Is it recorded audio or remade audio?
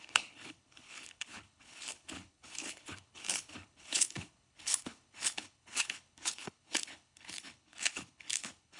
remade